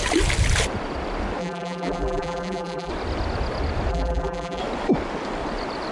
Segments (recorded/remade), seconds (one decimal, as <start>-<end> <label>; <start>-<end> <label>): 0.0-1.4 recorded; 1.4-2.9 remade; 2.9-3.9 recorded; 3.9-4.6 remade; 4.6-5.9 recorded